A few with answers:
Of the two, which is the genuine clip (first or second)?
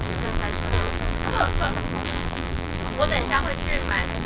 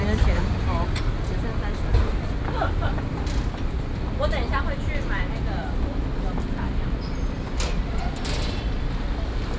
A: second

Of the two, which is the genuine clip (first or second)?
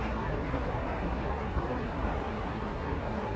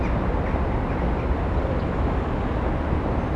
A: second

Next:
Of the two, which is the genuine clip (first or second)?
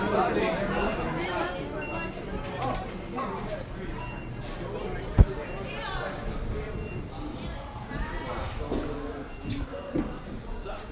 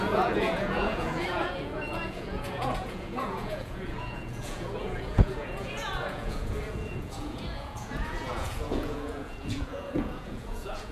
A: first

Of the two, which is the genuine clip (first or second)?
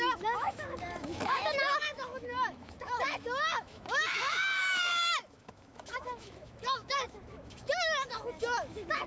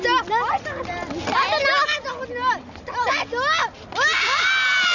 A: second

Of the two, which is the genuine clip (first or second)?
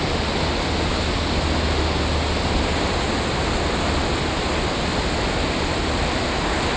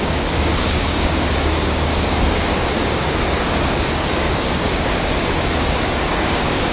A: first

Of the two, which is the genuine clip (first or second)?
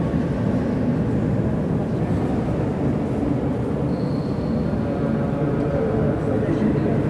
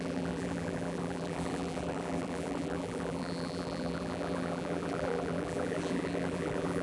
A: first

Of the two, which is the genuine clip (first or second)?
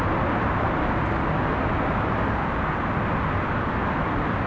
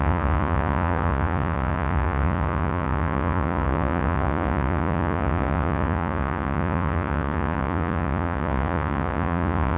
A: first